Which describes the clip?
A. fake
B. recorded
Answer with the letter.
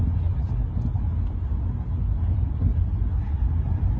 B